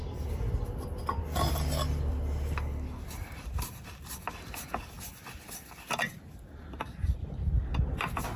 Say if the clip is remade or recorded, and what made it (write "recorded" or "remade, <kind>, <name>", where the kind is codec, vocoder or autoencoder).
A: recorded